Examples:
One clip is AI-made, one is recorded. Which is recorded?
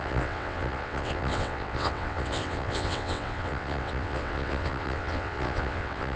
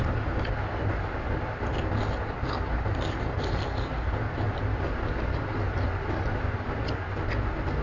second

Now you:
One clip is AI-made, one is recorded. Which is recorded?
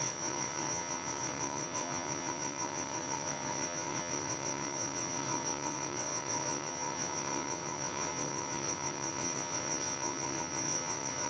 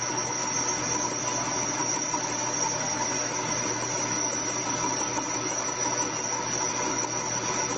second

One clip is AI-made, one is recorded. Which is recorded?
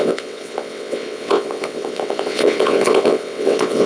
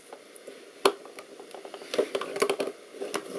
second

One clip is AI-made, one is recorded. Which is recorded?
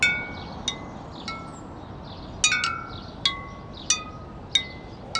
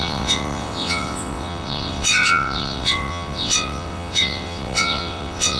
first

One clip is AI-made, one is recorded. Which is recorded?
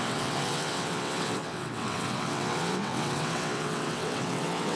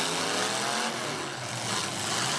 second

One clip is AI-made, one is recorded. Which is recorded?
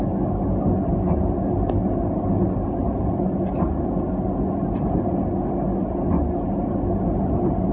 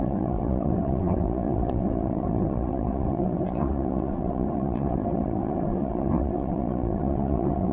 first